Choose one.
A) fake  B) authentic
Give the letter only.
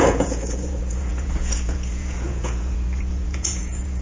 A